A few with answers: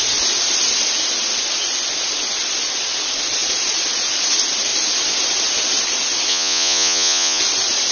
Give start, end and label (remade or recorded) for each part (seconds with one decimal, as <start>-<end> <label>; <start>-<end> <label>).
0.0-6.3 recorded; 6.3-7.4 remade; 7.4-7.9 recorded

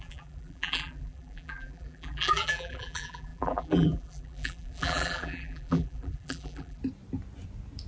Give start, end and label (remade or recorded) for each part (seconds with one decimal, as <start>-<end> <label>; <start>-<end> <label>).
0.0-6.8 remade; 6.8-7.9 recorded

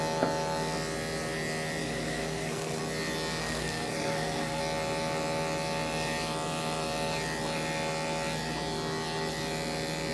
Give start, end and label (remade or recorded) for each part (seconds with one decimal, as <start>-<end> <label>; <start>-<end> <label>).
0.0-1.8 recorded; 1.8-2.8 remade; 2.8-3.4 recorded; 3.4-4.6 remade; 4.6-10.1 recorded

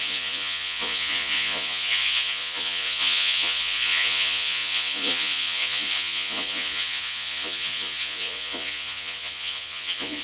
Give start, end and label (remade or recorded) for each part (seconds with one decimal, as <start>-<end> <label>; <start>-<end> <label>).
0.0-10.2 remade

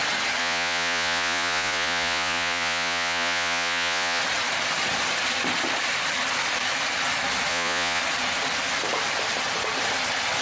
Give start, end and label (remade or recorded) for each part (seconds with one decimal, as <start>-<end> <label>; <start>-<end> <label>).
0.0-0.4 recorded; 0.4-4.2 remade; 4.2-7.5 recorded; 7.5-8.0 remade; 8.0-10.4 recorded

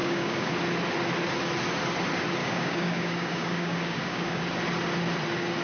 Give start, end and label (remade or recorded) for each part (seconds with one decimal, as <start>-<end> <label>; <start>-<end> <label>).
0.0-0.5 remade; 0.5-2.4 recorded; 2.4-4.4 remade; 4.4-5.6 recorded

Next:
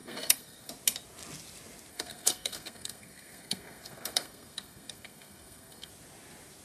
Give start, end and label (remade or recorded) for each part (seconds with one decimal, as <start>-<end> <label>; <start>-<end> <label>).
0.0-0.7 remade; 0.7-1.9 recorded; 1.9-5.9 remade; 5.9-6.6 recorded